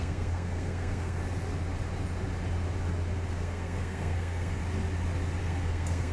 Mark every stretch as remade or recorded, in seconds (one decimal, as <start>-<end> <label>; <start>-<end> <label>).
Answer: 0.0-1.2 remade; 1.2-3.3 recorded; 3.3-4.6 remade; 4.6-5.4 recorded; 5.4-6.1 remade

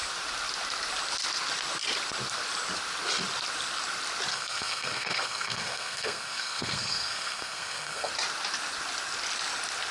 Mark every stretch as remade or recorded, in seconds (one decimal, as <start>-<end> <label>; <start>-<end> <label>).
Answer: 0.0-4.3 recorded; 4.3-8.1 remade; 8.1-9.9 recorded

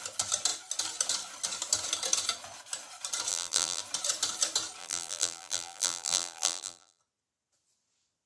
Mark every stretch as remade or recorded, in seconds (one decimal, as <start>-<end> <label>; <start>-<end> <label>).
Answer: 0.0-3.3 recorded; 3.3-3.8 remade; 3.8-4.8 recorded; 4.8-7.0 remade; 7.0-8.3 recorded

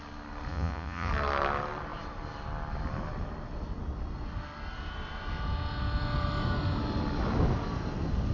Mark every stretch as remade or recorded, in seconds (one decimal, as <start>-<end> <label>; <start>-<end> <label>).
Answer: 0.0-0.5 recorded; 0.5-1.1 remade; 1.1-8.3 recorded

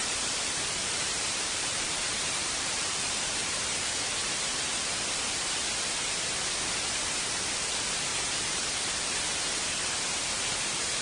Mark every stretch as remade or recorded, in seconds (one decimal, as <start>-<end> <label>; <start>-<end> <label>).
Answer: 0.0-3.4 remade; 3.4-7.2 recorded; 7.2-8.1 remade; 8.1-10.6 recorded; 10.6-11.0 remade

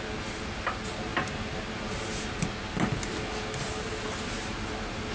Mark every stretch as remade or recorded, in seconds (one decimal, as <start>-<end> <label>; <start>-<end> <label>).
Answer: 0.0-5.1 recorded

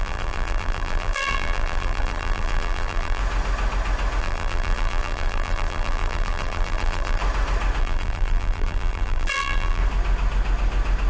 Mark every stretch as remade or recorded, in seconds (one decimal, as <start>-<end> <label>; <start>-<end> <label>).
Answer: 0.0-3.2 remade; 3.2-4.2 recorded; 4.2-7.2 remade; 7.2-7.8 recorded; 7.8-9.8 remade; 9.8-11.1 recorded